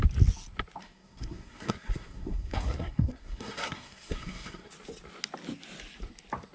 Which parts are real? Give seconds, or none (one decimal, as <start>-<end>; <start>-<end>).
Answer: 0.0-0.8; 4.7-6.5

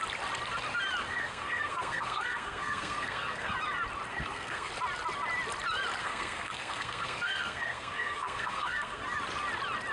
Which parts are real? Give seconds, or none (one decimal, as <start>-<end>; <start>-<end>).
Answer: 0.0-1.1; 3.5-4.1; 4.7-6.0; 9.0-9.9

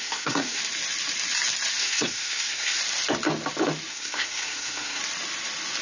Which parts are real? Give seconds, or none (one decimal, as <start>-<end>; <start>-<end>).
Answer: 0.6-1.8; 2.8-3.9; 5.0-5.8

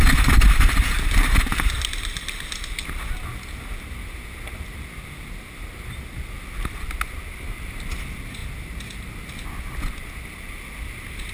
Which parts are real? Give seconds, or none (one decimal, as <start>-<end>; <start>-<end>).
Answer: 0.0-11.3

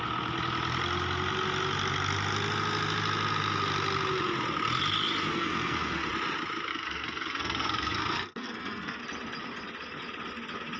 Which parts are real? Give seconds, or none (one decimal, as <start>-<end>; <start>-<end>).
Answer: 0.0-5.3; 6.1-6.7; 9.0-10.8